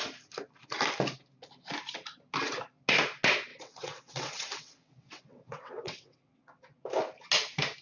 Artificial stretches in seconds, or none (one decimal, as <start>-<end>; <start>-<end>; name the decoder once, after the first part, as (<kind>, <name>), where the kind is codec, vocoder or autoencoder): 3.5-6.6 (vocoder, WaveNeXt)